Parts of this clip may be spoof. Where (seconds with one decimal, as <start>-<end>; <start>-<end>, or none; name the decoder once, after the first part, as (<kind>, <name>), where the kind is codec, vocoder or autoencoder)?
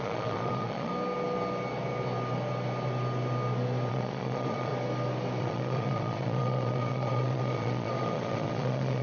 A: 0.0-0.9 (vocoder, Vocos); 3.9-4.7; 5.4-9.0